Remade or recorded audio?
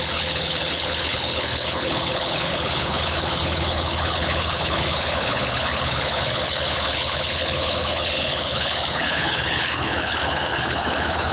remade